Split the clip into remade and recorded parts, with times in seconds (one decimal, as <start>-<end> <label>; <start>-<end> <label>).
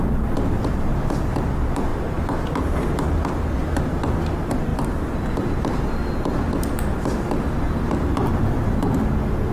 0.0-0.9 recorded; 0.9-1.4 remade; 1.4-1.9 recorded; 1.9-2.6 remade; 2.6-9.5 recorded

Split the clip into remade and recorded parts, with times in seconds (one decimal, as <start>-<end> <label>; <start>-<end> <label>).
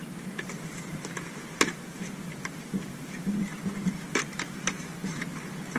0.0-3.5 remade; 3.5-4.1 recorded; 4.1-5.0 remade; 5.0-5.8 recorded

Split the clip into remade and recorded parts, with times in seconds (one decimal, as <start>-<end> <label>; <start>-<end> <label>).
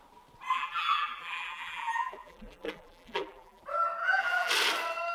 0.0-0.5 recorded; 0.5-3.6 remade; 3.6-4.0 recorded; 4.0-4.5 remade; 4.5-5.1 recorded